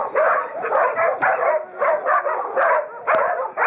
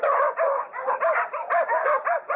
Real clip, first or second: second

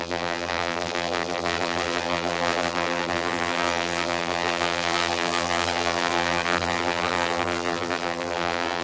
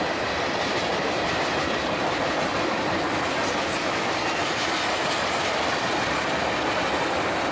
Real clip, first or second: second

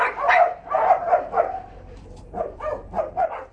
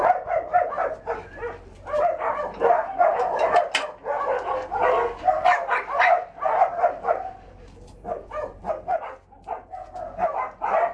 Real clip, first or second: second